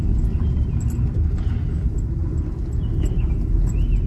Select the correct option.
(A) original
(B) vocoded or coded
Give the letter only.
A